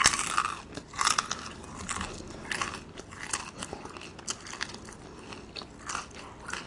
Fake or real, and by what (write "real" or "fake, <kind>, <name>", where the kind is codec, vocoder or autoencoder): real